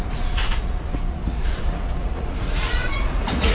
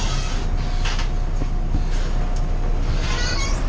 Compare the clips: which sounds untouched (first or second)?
second